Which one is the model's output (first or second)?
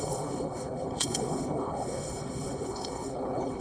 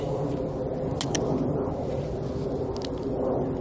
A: first